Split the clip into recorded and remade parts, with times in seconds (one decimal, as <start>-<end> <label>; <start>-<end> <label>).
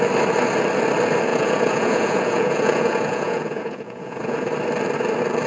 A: 0.0-1.3 recorded; 1.3-4.5 remade; 4.5-5.5 recorded